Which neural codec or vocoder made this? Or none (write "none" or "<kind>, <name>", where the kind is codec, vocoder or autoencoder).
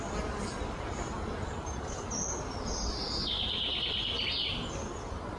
none